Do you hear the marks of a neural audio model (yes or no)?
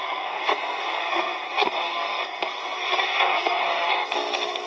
yes